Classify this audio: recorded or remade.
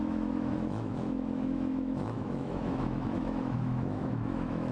remade